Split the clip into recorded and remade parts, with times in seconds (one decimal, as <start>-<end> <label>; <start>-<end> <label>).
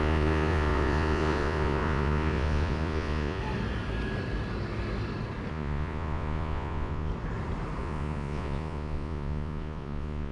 0.0-3.4 remade; 3.4-5.5 recorded; 5.5-7.1 remade; 7.1-7.8 recorded; 7.8-10.3 remade